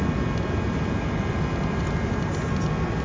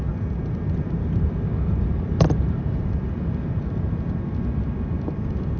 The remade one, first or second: second